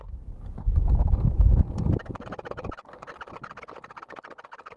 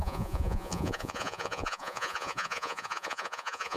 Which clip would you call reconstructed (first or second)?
second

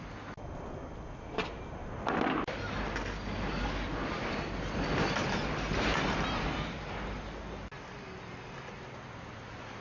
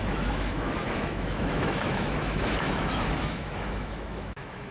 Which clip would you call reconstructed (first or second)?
second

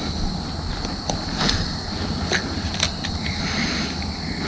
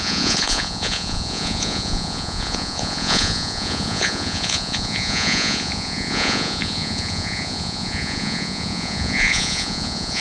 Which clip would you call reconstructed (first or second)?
second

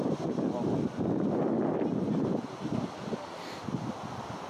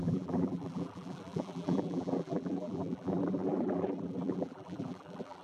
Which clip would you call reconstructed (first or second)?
second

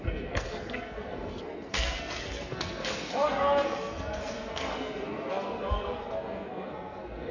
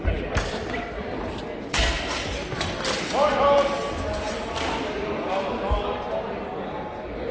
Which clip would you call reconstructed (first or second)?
first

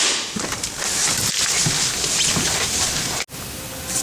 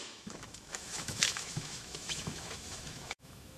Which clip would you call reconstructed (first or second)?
second